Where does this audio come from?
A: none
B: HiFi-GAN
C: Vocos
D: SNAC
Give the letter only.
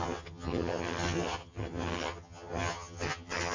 B